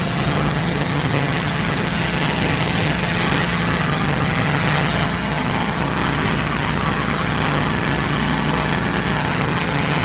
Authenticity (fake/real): fake